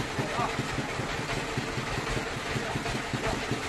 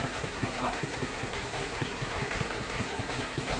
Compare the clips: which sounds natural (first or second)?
first